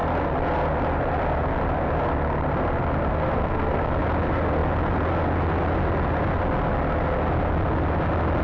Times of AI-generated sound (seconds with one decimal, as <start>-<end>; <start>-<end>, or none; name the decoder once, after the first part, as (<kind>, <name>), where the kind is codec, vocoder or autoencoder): 3.1-3.8 (codec, SNAC)